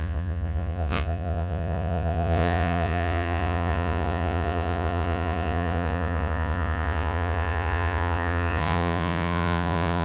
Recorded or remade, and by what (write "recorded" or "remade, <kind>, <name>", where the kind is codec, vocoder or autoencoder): remade, vocoder, Vocos